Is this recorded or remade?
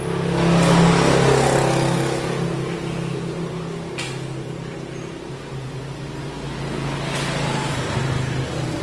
recorded